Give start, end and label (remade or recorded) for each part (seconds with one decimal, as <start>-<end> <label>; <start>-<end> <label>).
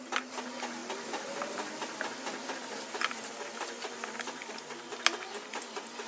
0.0-6.1 recorded